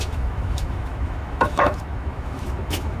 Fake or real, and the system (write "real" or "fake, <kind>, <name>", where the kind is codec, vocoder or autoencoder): fake, autoencoder, DAC-VAE